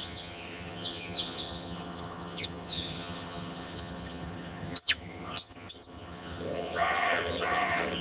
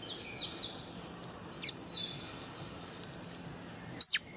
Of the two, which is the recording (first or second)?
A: second